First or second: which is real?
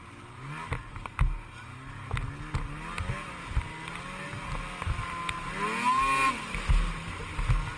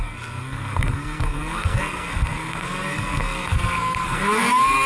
first